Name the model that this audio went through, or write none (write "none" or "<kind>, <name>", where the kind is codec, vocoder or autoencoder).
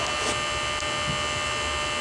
none